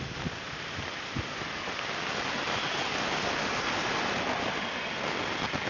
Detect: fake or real real